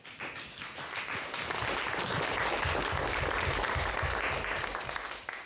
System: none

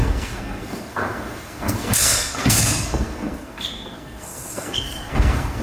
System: codec, SNAC